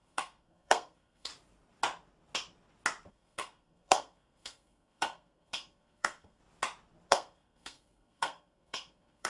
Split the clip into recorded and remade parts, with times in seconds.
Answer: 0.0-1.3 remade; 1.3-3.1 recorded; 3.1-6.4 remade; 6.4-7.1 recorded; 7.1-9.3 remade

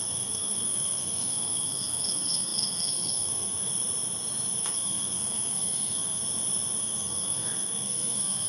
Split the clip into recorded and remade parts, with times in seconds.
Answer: 0.0-3.7 remade; 3.7-4.6 recorded; 4.6-6.2 remade; 6.2-6.8 recorded; 6.8-8.5 remade

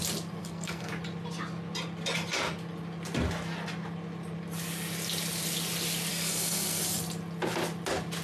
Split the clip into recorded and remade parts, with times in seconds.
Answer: 0.0-0.4 recorded; 0.4-0.9 remade; 0.9-6.1 recorded; 6.1-6.8 remade; 6.8-8.2 recorded

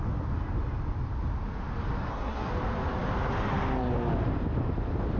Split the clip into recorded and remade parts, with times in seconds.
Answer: 0.0-2.0 recorded; 2.0-2.5 remade; 2.5-5.2 recorded

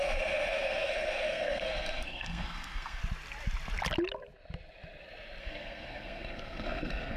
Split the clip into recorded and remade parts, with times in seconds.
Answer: 0.0-3.0 remade; 3.0-5.4 recorded; 5.4-7.2 remade

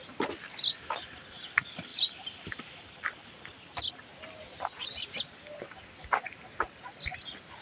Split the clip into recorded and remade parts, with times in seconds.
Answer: 0.0-7.6 recorded

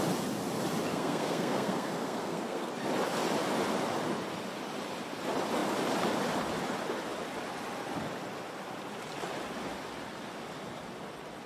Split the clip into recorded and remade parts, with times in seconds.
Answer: 0.0-0.9 recorded; 0.9-2.7 remade; 2.7-11.5 recorded